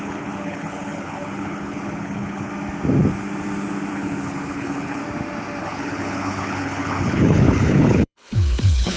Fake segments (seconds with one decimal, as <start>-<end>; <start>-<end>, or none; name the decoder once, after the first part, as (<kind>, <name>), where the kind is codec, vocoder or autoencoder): 0.0-2.5 (codec, HILCodec); 3.9-5.0; 5.6-9.0